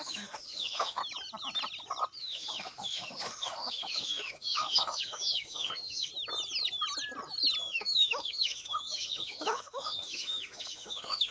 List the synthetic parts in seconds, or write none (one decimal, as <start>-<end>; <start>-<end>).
0.0-1.0; 2.2-6.1; 7.6-11.3